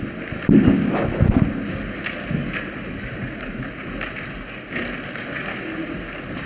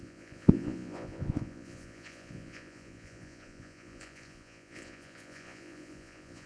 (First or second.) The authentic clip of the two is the first